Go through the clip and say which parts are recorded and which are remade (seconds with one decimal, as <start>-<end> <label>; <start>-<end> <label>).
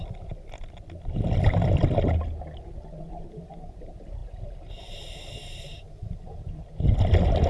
0.0-7.5 recorded